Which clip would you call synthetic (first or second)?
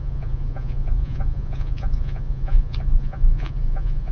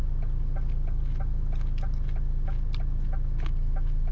first